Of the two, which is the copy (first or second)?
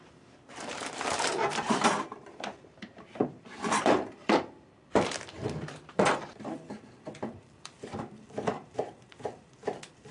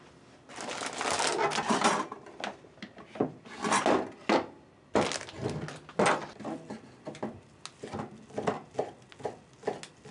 first